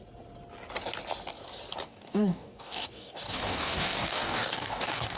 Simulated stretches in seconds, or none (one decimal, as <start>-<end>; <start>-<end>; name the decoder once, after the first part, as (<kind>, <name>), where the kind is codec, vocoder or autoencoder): 1.9-5.2 (codec, DAC)